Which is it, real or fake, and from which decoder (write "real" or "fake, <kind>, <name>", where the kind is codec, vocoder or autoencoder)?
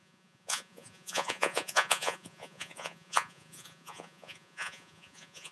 fake, vocoder, Vocos